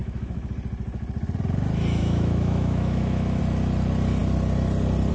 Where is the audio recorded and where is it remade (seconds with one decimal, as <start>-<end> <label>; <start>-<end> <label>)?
0.0-0.5 remade; 0.5-2.0 recorded; 2.0-3.4 remade; 3.4-5.1 recorded